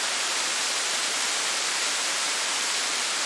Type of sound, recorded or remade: remade